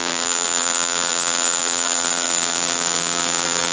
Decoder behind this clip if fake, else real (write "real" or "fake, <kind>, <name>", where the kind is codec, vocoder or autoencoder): fake, vocoder, BigVGAN v2